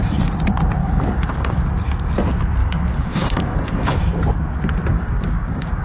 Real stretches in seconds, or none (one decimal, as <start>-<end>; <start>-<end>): 0.0-0.8; 1.5-2.6; 4.0-4.9